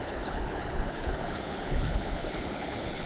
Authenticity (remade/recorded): remade